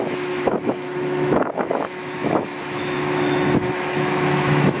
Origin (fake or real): fake